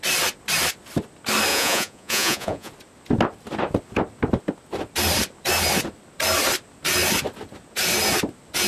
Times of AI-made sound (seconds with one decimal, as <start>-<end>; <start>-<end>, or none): 1.5-2.7